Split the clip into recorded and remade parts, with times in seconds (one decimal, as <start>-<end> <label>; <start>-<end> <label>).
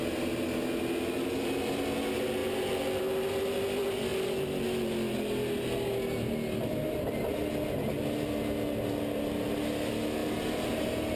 0.0-10.2 recorded; 10.2-11.2 remade